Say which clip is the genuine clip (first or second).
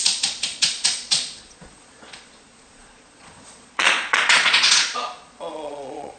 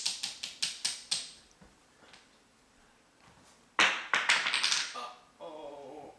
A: second